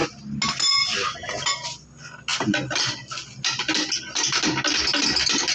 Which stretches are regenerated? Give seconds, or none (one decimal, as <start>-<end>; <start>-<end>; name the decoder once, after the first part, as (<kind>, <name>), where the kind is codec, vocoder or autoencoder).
none